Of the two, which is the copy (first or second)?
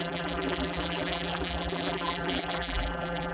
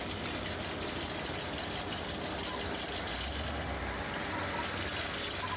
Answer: first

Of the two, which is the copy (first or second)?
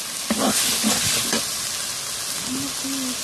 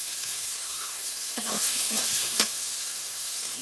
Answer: second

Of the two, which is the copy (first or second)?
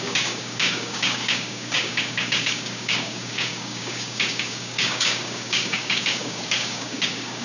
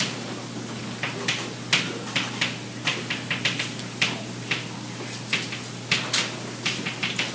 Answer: first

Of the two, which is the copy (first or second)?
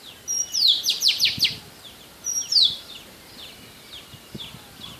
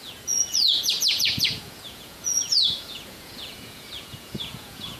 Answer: second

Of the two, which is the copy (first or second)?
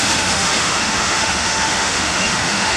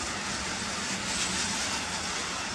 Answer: first